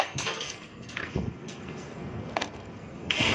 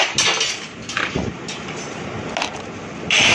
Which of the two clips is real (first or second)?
second